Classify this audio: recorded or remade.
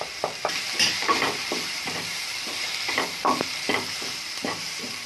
remade